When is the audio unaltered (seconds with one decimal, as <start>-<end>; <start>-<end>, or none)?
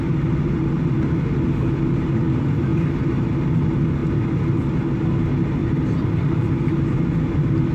0.0-2.7; 3.3-5.6; 7.0-7.7